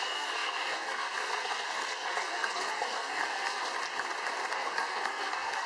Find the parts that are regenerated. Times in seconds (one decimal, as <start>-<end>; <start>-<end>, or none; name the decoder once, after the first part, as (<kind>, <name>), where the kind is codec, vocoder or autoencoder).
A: 0.0-3.6 (codec, SNAC); 4.5-5.7